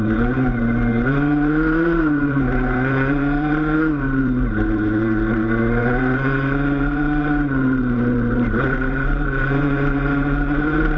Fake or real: fake